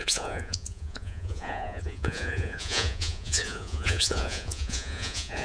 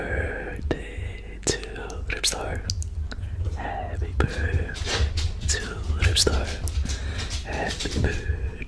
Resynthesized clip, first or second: first